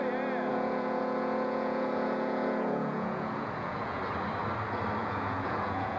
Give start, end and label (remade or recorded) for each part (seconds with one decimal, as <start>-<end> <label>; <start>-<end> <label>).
0.0-0.5 recorded; 0.5-4.0 remade; 4.0-5.0 recorded; 5.0-6.0 remade